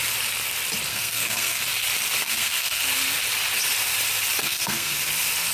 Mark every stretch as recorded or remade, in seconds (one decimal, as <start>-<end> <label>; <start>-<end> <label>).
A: 0.0-0.9 recorded; 0.9-1.6 remade; 1.6-2.2 recorded; 2.2-2.8 remade; 2.8-4.4 recorded; 4.4-5.0 remade; 5.0-5.5 recorded